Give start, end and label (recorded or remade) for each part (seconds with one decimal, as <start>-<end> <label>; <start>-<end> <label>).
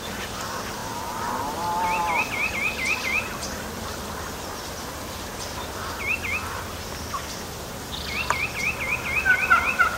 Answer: 0.0-10.0 recorded